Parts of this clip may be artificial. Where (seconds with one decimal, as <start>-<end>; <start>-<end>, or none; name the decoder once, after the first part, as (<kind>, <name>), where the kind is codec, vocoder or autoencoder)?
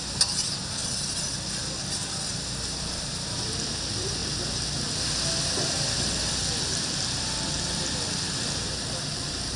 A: none